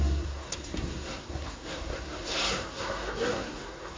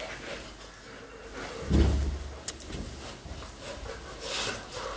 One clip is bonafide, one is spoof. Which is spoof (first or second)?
first